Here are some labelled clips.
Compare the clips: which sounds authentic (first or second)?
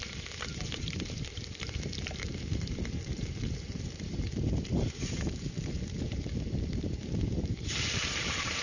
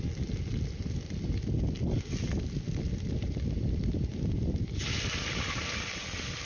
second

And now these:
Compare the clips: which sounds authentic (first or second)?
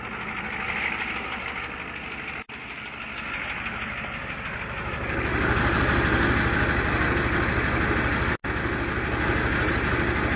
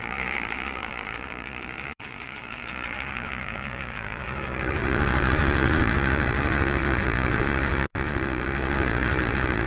first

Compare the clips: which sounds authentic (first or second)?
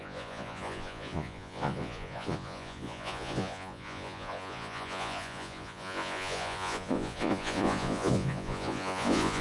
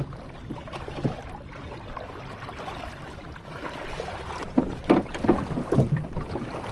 second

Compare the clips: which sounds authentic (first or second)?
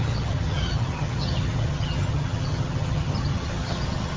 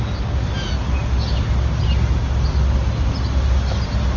second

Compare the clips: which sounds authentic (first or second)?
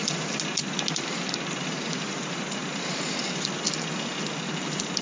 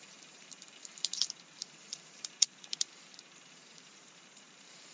first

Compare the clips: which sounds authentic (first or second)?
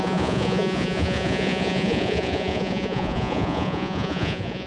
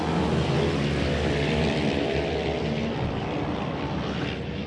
second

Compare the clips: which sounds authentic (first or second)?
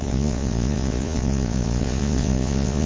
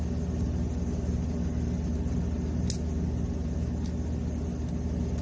second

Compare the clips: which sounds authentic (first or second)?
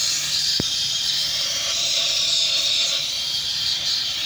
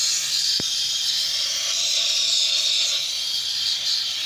second